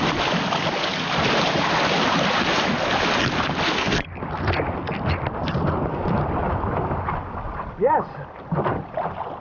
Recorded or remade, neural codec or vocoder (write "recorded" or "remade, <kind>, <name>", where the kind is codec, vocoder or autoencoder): recorded